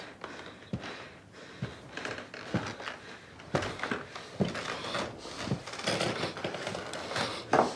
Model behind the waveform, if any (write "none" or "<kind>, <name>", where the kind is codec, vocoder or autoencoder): none